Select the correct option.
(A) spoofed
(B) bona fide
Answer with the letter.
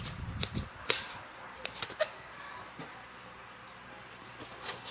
B